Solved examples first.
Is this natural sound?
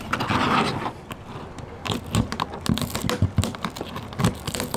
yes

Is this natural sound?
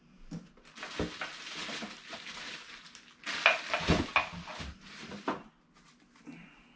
yes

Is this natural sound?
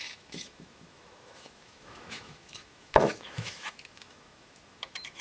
no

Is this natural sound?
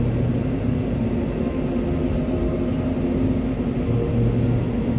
yes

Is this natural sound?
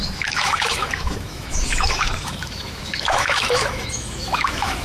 no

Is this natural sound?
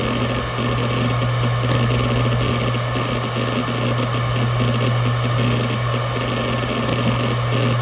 yes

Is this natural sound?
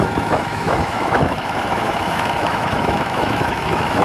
no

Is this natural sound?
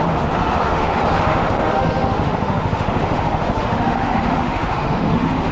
no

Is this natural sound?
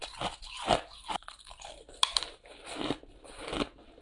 yes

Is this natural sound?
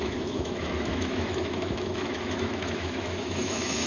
no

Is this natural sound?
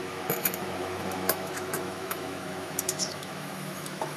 no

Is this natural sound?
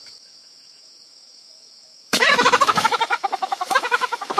no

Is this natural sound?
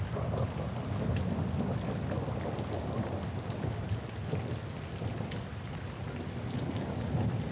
yes